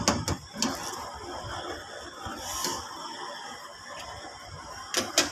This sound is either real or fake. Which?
real